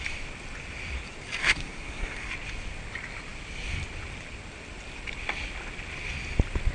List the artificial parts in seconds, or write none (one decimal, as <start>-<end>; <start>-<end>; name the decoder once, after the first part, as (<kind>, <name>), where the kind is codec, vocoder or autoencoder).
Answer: 1.4-2.3 (codec, SNAC)